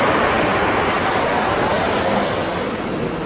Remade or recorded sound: recorded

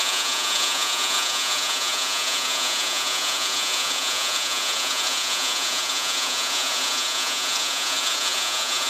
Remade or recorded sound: remade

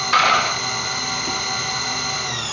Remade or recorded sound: recorded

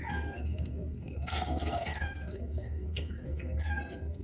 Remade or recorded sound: remade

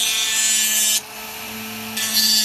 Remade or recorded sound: recorded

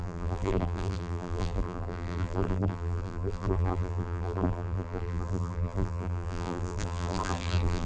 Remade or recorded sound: remade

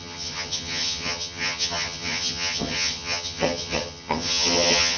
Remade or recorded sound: remade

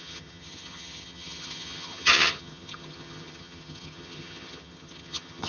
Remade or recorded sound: remade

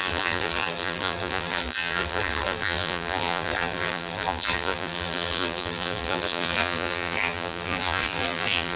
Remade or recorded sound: remade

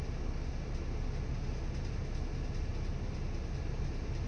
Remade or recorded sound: recorded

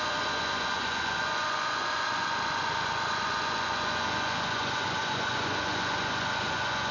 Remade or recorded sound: remade